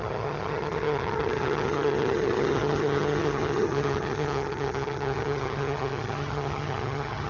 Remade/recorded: remade